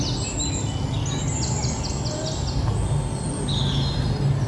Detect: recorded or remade recorded